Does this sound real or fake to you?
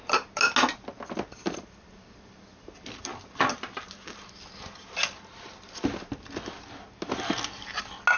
real